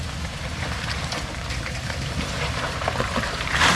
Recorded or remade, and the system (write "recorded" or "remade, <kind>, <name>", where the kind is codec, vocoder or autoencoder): remade, vocoder, BigVGAN v2